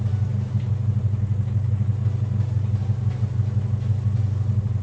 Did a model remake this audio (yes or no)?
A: no